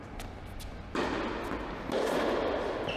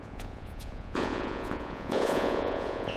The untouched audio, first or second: first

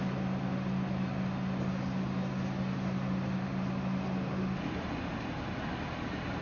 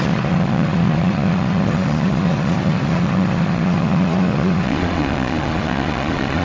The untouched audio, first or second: first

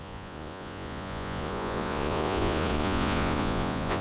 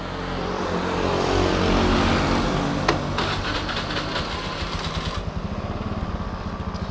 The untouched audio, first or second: second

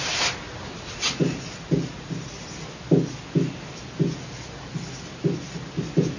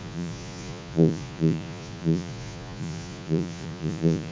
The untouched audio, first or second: first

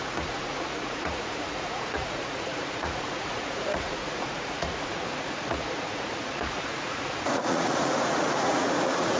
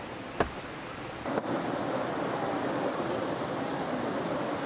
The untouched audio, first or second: second